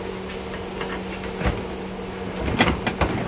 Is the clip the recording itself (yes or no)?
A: yes